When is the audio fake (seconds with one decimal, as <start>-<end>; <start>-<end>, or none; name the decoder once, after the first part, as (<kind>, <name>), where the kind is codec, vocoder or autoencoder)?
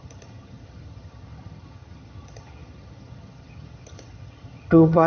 0.0-5.1 (vocoder, HiFi-GAN)